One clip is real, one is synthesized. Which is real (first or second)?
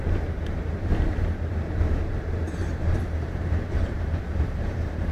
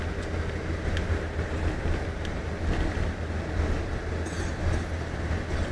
second